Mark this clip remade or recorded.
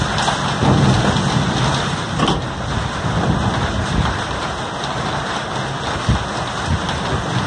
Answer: recorded